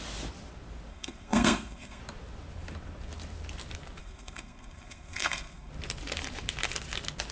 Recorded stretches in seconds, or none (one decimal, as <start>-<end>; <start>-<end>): 0.0-0.9; 2.0-4.0; 5.7-7.3